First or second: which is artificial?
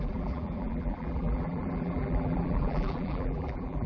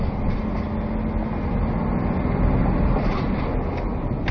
first